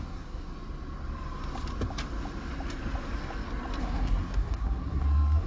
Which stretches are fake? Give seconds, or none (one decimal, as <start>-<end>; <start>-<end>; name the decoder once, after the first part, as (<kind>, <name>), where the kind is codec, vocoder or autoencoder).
0.0-0.5 (codec, SNAC); 3.8-5.5